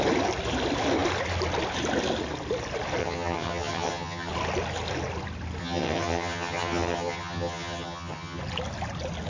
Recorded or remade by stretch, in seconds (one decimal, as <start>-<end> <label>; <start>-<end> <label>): 0.0-3.0 recorded; 3.0-4.3 remade; 4.3-5.6 recorded; 5.6-8.4 remade; 8.4-9.3 recorded